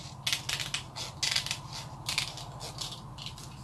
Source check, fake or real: real